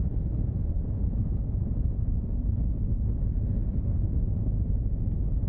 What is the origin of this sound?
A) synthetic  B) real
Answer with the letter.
A